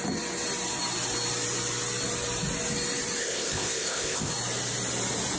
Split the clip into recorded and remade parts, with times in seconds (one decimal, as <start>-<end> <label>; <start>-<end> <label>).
0.0-3.2 recorded; 3.2-4.3 remade; 4.3-5.4 recorded